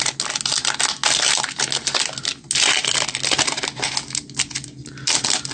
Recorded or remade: recorded